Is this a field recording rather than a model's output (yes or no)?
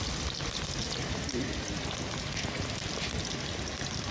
yes